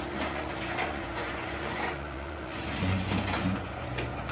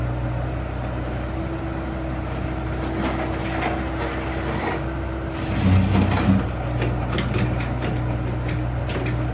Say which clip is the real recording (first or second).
second